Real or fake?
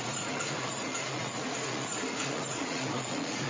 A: fake